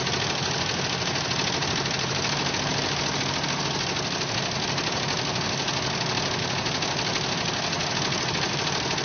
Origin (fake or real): real